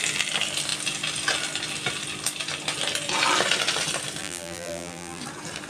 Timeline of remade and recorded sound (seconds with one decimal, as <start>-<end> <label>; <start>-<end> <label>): 0.0-4.2 recorded; 4.2-5.2 remade; 5.2-5.7 recorded